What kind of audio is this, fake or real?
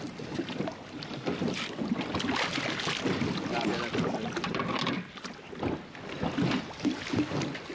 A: real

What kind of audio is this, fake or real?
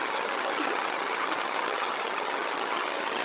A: fake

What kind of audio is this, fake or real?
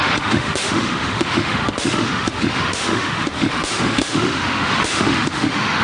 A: fake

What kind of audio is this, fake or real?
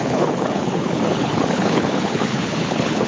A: fake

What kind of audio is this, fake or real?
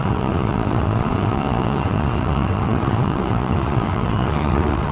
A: fake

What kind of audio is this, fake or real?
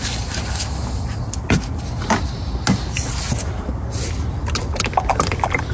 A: real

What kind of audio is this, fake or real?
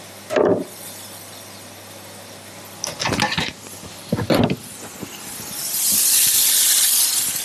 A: real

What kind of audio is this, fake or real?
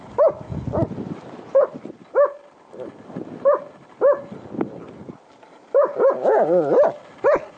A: real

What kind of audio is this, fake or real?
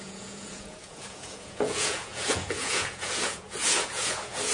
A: fake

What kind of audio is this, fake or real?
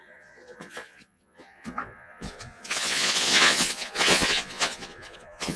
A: fake